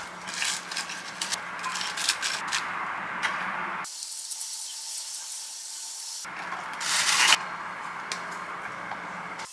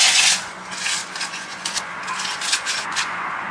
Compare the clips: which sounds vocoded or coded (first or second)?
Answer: second